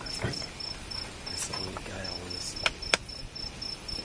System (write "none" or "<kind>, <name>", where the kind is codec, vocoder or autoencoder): none